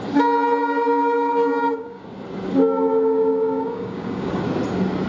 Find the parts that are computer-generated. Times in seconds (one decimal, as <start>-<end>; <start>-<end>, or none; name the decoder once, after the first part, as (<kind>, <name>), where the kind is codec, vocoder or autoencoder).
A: 0.6-2.0 (codec, DAC); 2.6-4.4